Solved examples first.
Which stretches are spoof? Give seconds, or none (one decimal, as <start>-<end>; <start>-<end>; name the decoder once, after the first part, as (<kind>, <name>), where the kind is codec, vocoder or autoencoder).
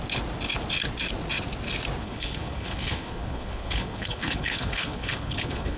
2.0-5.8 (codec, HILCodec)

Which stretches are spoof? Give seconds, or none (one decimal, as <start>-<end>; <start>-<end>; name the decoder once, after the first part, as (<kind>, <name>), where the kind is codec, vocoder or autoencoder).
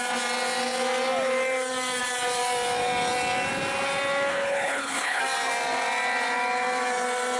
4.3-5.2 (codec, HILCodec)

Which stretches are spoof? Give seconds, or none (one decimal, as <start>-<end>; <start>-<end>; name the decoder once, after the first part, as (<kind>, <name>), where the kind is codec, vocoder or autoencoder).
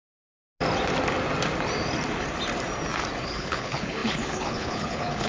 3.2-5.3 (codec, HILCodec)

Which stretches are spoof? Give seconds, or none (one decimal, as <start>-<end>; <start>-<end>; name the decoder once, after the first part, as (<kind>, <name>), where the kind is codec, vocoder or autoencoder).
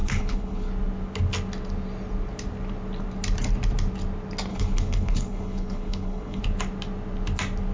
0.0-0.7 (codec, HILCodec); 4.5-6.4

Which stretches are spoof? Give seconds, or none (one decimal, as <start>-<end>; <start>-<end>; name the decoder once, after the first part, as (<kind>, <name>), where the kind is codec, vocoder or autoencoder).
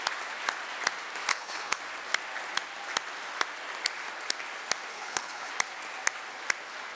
1.3-1.8 (codec, HILCodec); 4.9-5.5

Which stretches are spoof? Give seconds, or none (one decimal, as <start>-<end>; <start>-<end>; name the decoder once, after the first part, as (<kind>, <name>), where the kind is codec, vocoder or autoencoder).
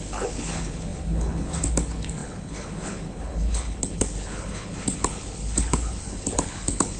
0.0-7.0 (codec, HILCodec)